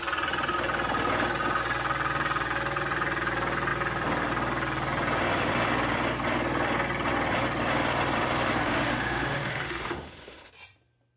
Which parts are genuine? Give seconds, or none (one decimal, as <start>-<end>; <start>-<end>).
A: 0.0-8.6; 10.5-11.2